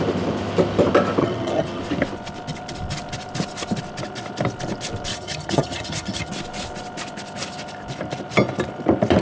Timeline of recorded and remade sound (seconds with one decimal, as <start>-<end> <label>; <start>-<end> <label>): 0.0-1.2 recorded; 1.2-1.8 remade; 1.8-5.1 recorded; 5.1-6.3 remade; 6.3-9.2 recorded